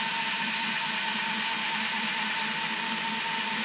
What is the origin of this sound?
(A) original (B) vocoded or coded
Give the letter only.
A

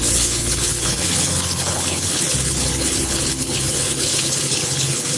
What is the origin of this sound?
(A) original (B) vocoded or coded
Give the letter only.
B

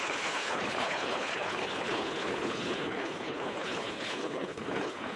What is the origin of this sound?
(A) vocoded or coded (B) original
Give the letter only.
A